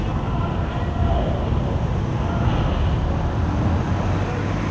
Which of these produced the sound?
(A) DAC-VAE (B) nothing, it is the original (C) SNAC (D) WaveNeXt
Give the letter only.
B